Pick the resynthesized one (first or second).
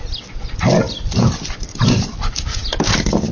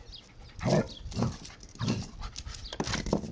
first